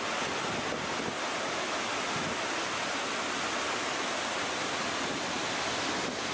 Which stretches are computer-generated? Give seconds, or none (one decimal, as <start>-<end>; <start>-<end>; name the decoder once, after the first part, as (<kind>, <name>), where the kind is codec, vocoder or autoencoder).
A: none